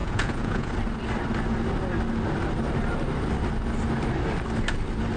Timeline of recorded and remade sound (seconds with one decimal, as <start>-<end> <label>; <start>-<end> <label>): 0.0-0.7 remade; 0.7-5.2 recorded